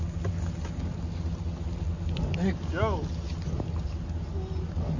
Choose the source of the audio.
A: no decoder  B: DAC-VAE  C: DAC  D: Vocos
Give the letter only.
A